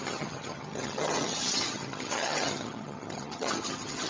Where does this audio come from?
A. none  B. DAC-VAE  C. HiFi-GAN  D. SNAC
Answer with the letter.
C